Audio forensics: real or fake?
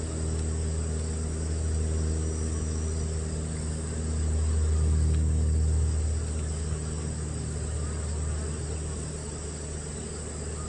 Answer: real